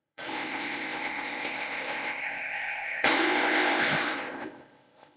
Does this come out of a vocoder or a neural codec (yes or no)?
yes